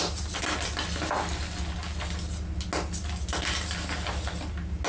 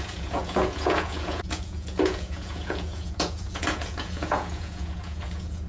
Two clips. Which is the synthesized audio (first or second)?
second